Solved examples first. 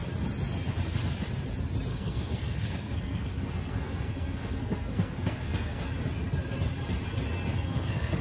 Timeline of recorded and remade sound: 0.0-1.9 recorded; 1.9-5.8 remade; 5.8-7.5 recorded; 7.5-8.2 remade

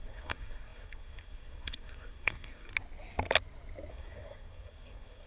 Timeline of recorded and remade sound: 0.0-2.7 remade; 2.7-3.9 recorded; 3.9-5.3 remade

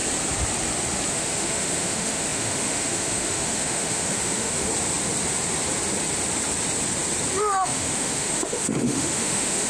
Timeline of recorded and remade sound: 0.0-1.1 recorded; 1.1-4.7 remade; 4.7-7.4 recorded; 7.4-9.7 remade